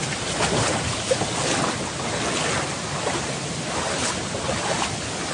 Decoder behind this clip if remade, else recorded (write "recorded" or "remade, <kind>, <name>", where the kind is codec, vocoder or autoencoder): recorded